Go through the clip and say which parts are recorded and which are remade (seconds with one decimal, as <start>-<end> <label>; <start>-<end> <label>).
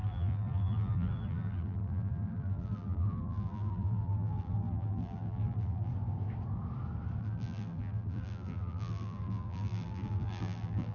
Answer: 0.0-5.9 remade; 5.9-7.2 recorded; 7.2-10.9 remade